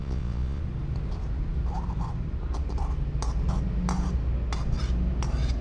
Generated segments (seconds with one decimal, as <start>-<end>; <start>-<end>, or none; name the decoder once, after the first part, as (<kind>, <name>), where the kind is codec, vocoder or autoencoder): 0.0-0.6 (vocoder, Vocos)